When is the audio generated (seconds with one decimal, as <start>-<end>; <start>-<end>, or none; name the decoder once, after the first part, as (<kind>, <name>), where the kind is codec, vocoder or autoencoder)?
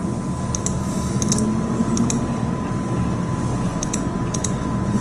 3.5-5.0 (vocoder, Vocos)